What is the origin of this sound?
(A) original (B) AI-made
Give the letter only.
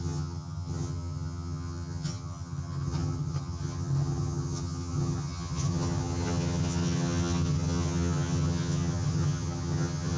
B